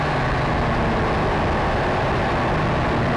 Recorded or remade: recorded